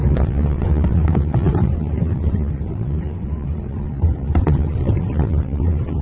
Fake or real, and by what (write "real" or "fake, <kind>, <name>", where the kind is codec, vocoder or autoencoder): fake, vocoder, WaveNeXt